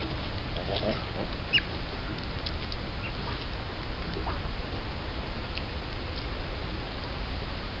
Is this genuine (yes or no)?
yes